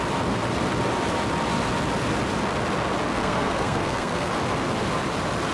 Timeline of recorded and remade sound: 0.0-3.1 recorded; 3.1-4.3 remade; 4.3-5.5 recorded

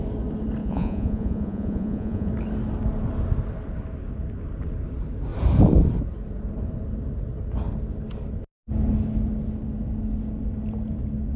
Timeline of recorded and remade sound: 0.0-0.6 recorded; 0.6-2.3 remade; 2.3-11.4 recorded